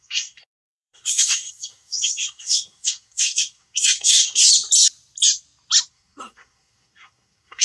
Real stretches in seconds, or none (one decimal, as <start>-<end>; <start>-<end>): 4.4-5.9